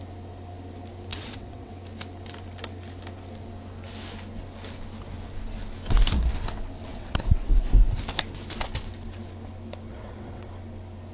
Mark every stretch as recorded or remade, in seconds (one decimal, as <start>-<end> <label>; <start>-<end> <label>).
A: 0.0-1.1 recorded; 1.1-1.7 remade; 1.7-6.9 recorded; 6.9-7.6 remade; 7.6-9.9 recorded; 9.9-10.5 remade; 10.5-11.1 recorded